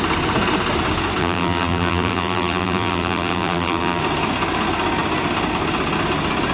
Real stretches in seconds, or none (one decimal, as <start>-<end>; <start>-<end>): 0.0-1.2; 4.0-6.5